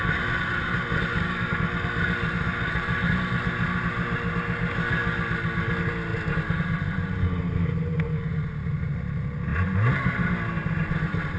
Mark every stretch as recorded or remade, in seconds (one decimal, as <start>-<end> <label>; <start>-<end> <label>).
0.0-11.4 recorded